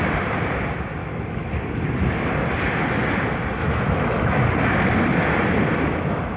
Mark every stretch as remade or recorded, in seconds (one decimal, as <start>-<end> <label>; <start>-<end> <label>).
0.0-1.0 recorded; 1.0-1.5 remade; 1.5-3.6 recorded; 3.6-4.4 remade; 4.4-6.4 recorded